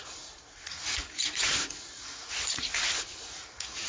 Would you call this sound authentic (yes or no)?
no